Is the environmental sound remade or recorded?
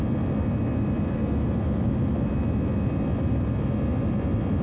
recorded